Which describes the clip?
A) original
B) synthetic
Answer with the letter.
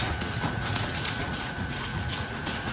B